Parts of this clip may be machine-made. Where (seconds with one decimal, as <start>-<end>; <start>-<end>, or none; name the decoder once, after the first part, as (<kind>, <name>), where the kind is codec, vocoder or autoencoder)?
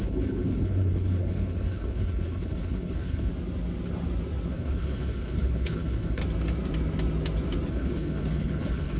0.0-3.3 (codec, HILCodec); 4.5-6.2; 7.7-9.0